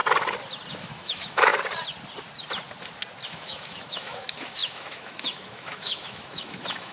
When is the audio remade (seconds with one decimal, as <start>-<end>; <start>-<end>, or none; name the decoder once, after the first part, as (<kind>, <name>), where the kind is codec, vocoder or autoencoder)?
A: 0.7-1.5 (autoencoder, DAC-VAE); 3.3-6.9